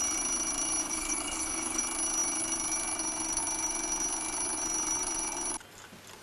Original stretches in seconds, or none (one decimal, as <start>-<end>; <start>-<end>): 0.0-0.8; 1.8-6.2